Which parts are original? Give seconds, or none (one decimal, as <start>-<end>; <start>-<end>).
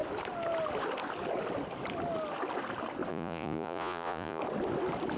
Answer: 0.0-3.1; 4.4-5.2